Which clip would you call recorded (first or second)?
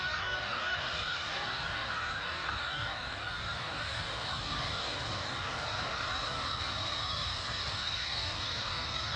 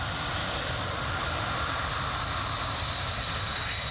second